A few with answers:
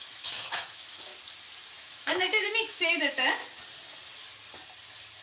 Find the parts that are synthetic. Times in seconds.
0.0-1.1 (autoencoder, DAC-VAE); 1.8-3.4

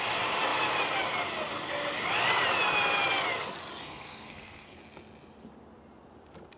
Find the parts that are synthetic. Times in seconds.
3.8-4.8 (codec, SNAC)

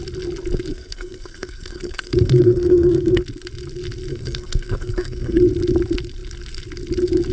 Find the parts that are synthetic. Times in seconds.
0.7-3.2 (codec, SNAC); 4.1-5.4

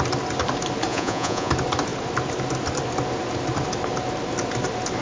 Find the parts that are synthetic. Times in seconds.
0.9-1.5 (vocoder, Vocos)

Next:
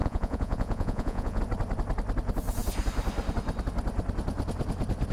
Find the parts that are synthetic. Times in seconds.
0.0-1.4 (vocoder, Vocos)